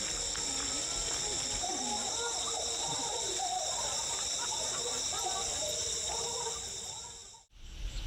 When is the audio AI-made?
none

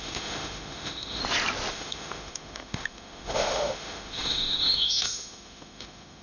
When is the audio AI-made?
0.0-1.2 (autoencoder, DAC-VAE); 1.7-6.2

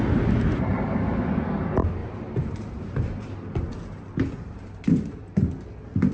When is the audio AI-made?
0.7-1.6 (vocoder, BigVGAN v2); 2.0-5.2

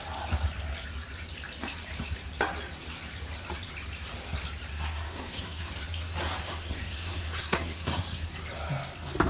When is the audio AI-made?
4.7-5.7 (codec, SNAC); 6.5-8.3

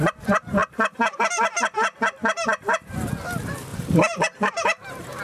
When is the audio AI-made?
3.7-5.2 (vocoder, BigVGAN v2)